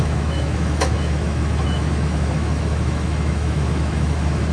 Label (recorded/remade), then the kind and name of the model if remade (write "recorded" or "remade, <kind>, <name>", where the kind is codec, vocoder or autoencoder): remade, autoencoder, DAC-VAE